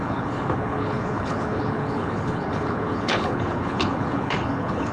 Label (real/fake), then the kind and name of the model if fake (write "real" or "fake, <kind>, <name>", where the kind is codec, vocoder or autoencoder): fake, codec, HILCodec